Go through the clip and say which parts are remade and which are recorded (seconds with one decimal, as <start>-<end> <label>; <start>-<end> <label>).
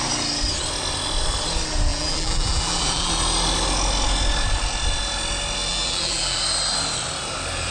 0.0-1.9 recorded; 1.9-3.1 remade; 3.1-5.7 recorded; 5.7-6.4 remade; 6.4-7.7 recorded